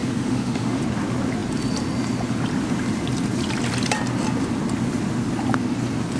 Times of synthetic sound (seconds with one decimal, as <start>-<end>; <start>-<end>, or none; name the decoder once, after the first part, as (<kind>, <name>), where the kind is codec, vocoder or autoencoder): 0.0-0.8 (autoencoder, DAC-VAE)